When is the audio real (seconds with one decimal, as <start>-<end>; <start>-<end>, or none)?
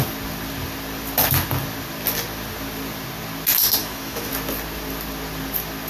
0.0-3.8; 4.3-5.9